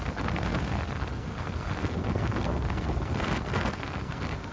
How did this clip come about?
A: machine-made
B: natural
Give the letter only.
A